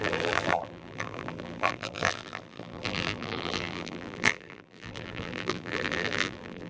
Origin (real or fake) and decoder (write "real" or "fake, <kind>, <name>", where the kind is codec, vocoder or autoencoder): fake, vocoder, BigVGAN v2